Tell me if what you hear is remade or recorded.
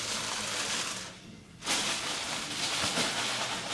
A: recorded